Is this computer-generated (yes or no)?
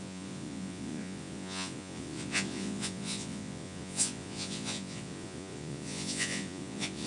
yes